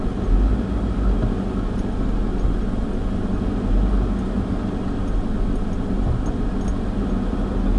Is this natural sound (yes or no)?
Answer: yes